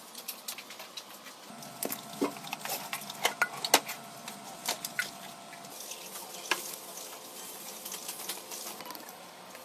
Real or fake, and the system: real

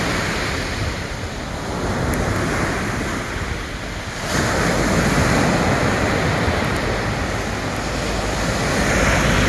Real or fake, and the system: real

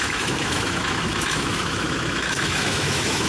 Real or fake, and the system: fake, autoencoder, DAC-VAE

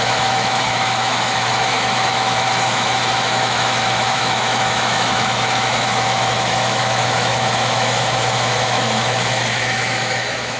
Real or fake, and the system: fake, autoencoder, DAC-VAE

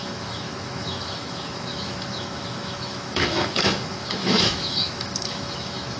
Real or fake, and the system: fake, autoencoder, DAC-VAE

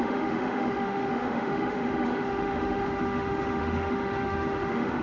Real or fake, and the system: fake, autoencoder, DAC-VAE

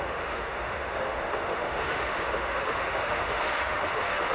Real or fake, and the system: fake, autoencoder, DAC-VAE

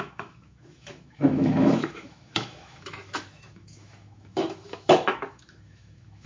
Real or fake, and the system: fake, autoencoder, DAC-VAE